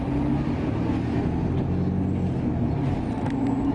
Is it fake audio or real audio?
real